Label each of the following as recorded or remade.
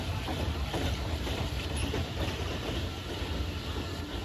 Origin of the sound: recorded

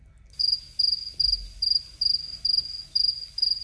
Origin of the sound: recorded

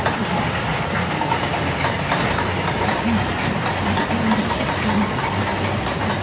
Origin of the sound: recorded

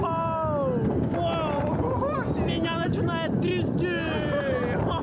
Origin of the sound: recorded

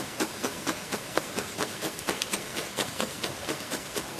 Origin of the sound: remade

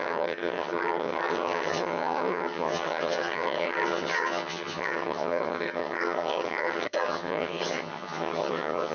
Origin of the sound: remade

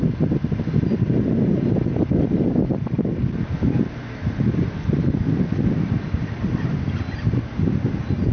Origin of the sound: recorded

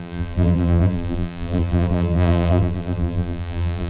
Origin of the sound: remade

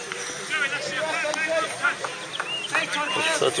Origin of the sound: recorded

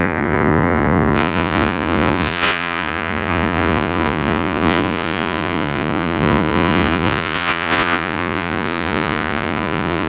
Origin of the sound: remade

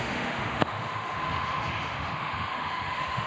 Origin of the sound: remade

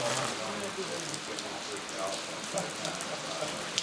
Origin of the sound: recorded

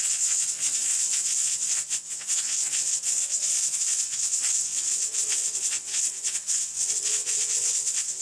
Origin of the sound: remade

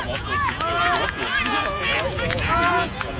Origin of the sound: remade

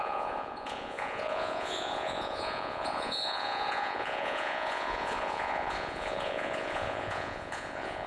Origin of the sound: remade